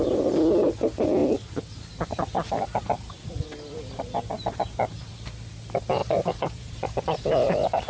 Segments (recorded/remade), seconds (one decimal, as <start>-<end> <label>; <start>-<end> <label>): 0.0-6.0 recorded; 6.0-7.9 remade